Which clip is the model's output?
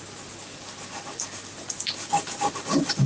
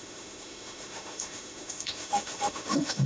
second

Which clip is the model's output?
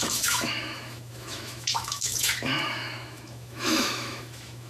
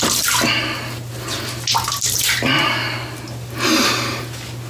first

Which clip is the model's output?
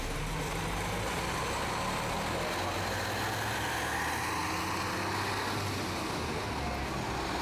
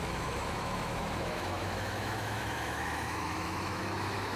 second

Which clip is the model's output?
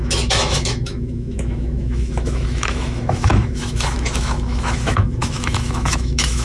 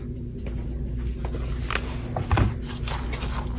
first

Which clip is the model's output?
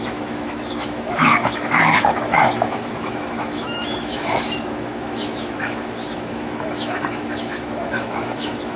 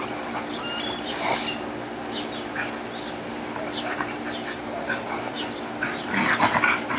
first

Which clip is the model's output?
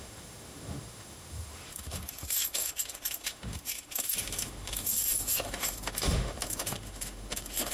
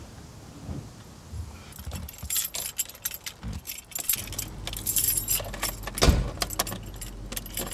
first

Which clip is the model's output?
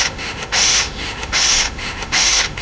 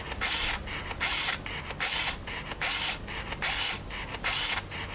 first